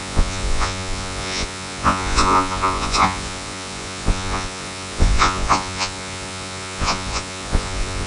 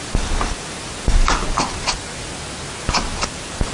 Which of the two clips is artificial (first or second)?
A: first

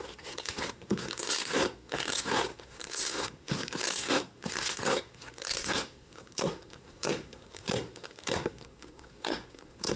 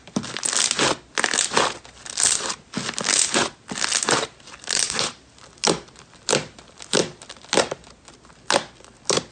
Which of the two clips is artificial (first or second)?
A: first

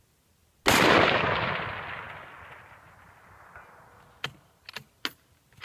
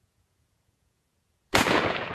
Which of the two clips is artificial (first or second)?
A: second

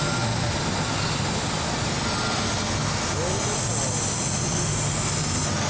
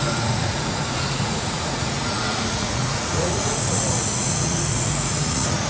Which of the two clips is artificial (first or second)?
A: second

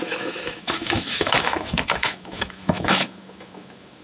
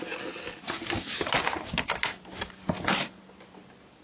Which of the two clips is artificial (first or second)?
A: first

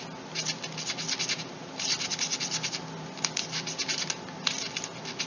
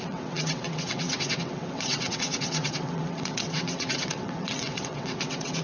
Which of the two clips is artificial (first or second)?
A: second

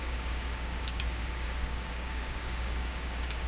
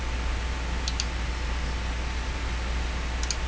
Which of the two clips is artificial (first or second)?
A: first